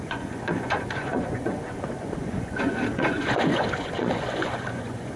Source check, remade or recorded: remade